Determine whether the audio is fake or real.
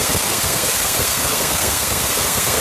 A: fake